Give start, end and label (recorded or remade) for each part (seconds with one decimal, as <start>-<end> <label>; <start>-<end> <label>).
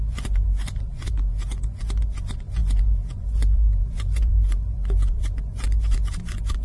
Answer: 0.0-6.6 remade